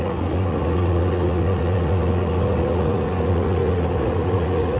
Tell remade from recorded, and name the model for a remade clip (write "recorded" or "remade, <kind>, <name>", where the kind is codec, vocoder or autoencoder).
remade, vocoder, Vocos